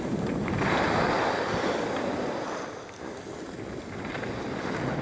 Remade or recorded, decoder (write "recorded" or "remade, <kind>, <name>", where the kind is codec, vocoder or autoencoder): recorded